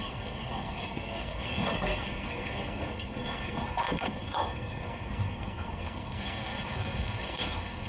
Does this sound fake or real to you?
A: fake